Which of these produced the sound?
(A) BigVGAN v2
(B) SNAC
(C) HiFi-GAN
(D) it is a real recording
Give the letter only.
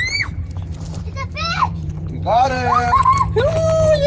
A